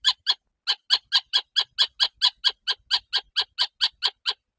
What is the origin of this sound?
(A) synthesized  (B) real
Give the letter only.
B